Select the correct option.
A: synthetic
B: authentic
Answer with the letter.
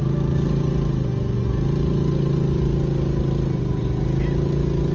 B